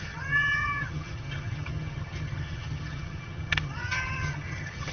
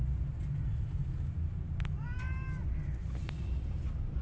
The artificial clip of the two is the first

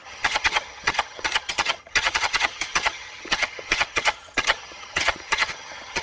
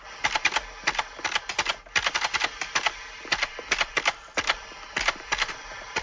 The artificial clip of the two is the first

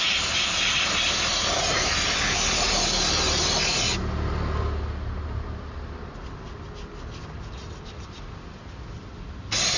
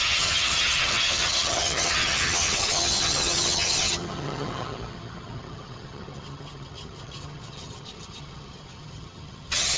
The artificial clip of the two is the second